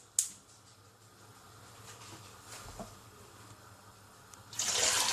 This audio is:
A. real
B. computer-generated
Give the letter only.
A